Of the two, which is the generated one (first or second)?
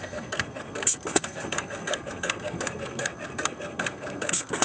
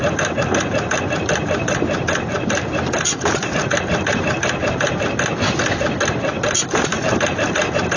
first